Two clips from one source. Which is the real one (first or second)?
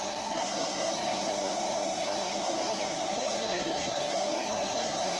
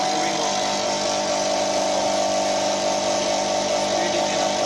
second